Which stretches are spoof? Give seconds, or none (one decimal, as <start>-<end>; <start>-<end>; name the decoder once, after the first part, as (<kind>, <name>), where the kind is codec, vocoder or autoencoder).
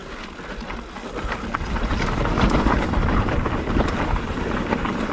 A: 1.9-5.1 (vocoder, BigVGAN v2)